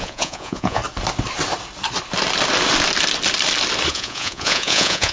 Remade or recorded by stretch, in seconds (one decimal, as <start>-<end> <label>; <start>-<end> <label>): 0.0-0.8 remade; 0.8-3.9 recorded; 3.9-5.1 remade